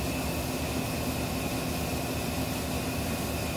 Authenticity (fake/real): real